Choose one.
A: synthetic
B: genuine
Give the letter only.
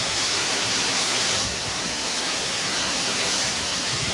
A